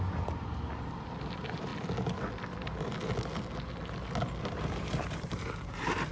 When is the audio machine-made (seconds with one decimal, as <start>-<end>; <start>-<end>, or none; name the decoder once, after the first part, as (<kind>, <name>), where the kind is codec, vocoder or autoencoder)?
0.0-1.7 (vocoder, BigVGAN v2); 4.4-6.1